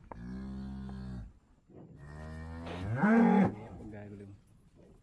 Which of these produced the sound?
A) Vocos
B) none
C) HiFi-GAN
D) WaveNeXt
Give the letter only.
B